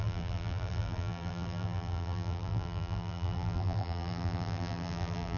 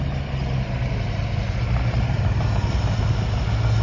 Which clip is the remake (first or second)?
first